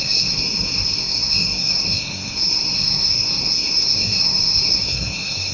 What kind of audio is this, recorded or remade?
remade